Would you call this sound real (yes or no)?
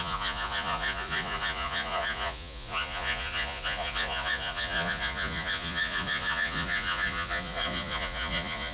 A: no